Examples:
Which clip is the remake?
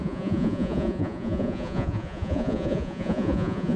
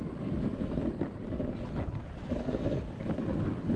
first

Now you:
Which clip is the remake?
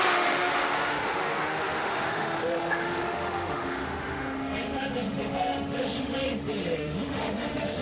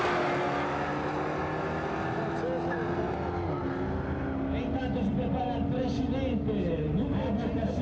first